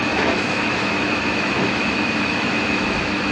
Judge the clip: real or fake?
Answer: fake